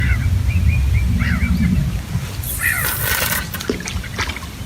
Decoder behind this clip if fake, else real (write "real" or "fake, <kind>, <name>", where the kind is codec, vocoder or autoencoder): real